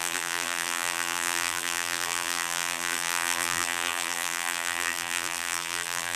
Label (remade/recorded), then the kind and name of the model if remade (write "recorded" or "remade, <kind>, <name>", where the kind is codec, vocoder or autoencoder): remade, vocoder, BigVGAN v2